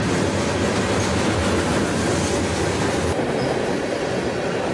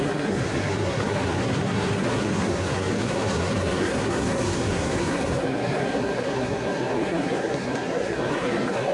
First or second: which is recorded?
first